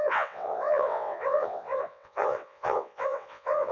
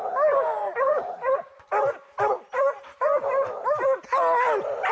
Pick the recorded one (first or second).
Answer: second